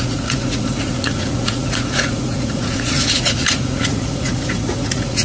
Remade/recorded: remade